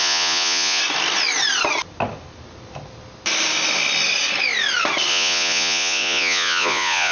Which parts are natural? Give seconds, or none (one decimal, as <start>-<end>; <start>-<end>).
0.8-5.1